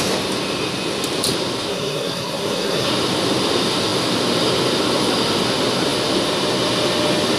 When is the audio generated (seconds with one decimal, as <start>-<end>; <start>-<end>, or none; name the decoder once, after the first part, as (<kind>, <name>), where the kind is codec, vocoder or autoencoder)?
1.7-2.9 (codec, SNAC)